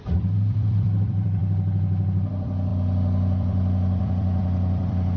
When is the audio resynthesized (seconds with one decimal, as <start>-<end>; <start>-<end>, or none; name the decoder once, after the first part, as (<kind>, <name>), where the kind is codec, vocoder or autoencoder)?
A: 0.0-1.4 (vocoder, BigVGAN v2); 2.3-5.2